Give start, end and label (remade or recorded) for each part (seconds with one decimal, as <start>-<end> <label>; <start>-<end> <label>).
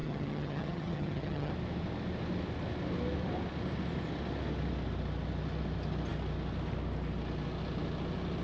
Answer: 0.0-1.5 remade; 1.5-8.4 recorded